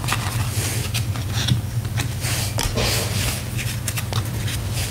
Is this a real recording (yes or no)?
yes